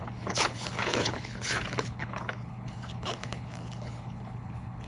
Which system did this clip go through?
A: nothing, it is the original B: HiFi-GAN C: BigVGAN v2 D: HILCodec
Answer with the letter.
D